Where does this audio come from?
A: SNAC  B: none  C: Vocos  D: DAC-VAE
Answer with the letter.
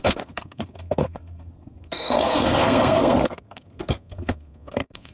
A